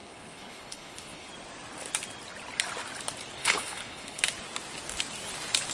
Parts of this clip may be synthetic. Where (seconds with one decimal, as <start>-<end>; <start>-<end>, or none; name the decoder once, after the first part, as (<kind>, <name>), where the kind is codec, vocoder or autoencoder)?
0.0-1.3 (codec, HILCodec); 3.4-4.2